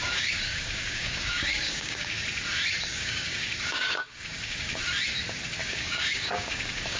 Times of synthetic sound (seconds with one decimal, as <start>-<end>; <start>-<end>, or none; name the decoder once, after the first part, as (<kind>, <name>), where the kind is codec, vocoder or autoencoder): 0.0-2.2 (codec, DAC); 2.8-4.8; 5.6-7.0

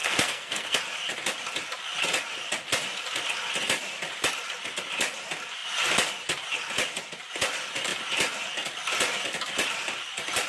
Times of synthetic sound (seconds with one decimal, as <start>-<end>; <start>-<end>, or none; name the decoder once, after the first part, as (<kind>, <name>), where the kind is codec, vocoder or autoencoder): 0.0-0.8 (codec, SNAC)

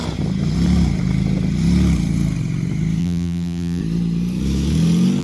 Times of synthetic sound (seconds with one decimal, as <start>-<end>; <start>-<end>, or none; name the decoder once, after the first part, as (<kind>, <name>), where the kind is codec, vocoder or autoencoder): 3.0-3.8 (vocoder, BigVGAN v2)

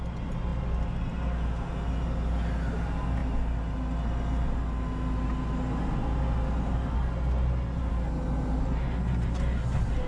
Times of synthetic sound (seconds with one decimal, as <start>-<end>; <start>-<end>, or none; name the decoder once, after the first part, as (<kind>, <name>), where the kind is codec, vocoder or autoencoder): none

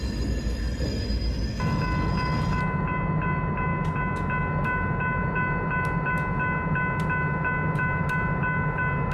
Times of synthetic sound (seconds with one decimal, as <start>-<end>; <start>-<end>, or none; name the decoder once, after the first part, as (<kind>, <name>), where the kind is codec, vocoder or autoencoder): none

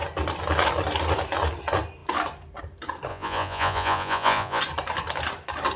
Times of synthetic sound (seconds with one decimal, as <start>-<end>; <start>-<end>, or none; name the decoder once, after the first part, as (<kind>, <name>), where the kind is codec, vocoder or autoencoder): 3.1-4.6 (vocoder, Vocos)